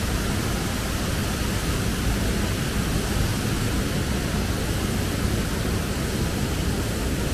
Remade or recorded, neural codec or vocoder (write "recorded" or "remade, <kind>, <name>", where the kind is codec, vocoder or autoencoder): recorded